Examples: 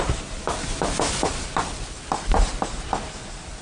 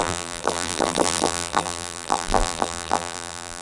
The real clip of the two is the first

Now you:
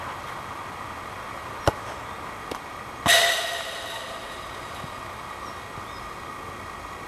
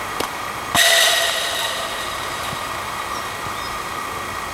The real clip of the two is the first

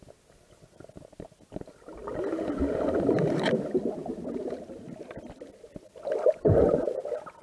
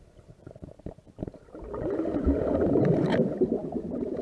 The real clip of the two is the first